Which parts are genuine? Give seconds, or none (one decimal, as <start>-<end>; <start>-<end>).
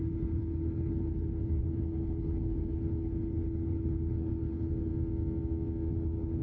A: 4.9-5.9